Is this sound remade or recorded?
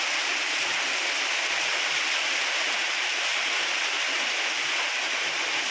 remade